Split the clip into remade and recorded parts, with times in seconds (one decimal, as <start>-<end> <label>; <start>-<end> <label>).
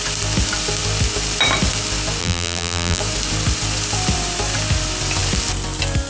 0.0-2.2 recorded; 2.2-3.0 remade; 3.0-6.1 recorded